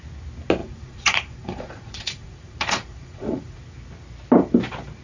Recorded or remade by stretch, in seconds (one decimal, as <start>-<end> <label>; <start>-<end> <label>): 0.0-0.6 recorded; 0.6-3.6 remade; 3.6-5.0 recorded